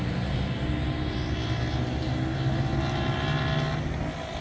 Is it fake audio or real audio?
real